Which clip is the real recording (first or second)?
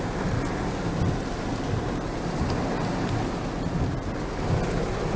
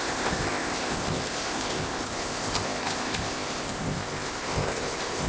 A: first